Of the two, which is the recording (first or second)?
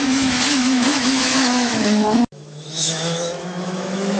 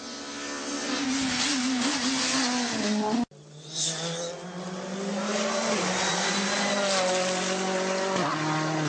second